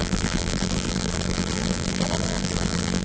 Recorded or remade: remade